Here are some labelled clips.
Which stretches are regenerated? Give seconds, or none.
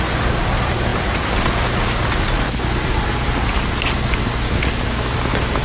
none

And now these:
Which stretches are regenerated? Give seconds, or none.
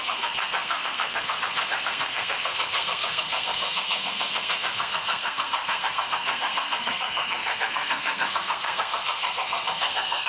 0.0-10.3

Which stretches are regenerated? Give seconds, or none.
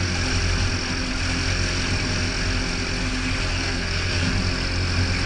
3.5-4.3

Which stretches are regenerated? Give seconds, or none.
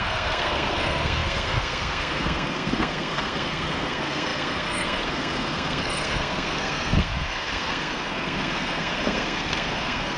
0.0-10.2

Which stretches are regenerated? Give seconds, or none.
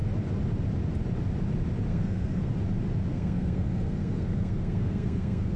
1.9-2.5; 3.1-5.6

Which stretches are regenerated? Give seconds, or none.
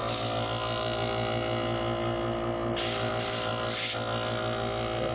none